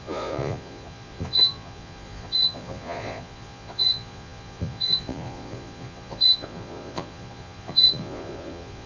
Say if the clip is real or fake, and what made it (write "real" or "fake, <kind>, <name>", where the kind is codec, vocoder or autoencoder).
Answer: fake, vocoder, Vocos